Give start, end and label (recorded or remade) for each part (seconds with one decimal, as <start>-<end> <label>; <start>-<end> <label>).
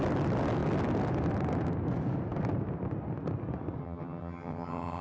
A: 0.0-3.8 recorded; 3.8-5.0 remade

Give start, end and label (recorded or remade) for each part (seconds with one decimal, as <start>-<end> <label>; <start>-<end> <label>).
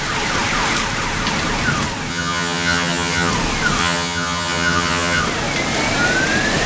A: 0.0-2.1 recorded; 2.1-3.3 remade; 3.3-3.8 recorded; 3.8-5.2 remade; 5.2-6.7 recorded